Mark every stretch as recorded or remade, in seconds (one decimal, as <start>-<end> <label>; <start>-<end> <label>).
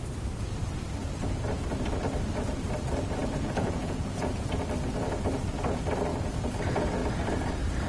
0.0-3.2 recorded; 3.2-4.5 remade; 4.5-7.9 recorded